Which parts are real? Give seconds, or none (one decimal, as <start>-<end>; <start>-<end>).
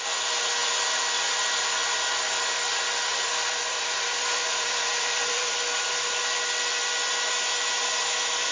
0.0-0.6; 2.0-3.1; 5.5-8.5